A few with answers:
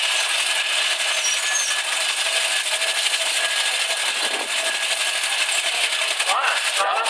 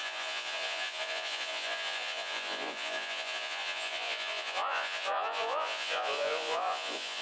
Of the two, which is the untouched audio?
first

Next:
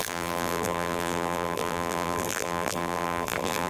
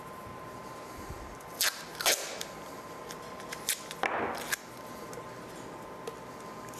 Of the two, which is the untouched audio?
second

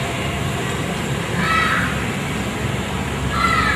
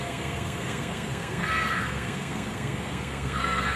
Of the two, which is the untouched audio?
first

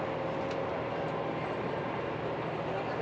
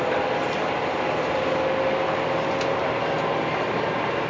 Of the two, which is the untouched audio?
second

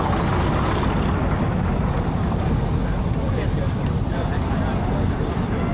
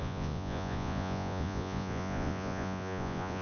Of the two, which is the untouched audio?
first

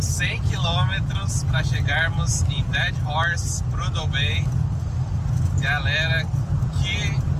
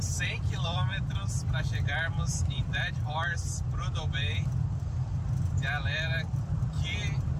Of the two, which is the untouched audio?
first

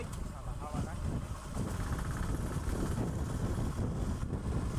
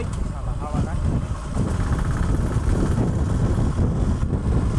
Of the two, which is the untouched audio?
second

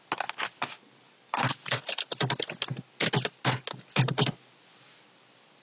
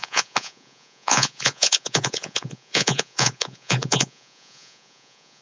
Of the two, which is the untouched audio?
first